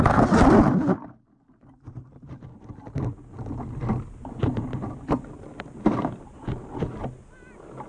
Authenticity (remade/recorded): recorded